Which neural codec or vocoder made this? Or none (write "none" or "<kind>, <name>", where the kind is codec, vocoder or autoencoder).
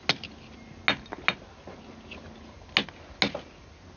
none